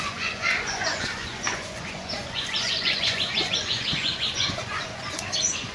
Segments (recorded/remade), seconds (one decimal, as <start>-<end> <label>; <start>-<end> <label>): 0.0-5.7 remade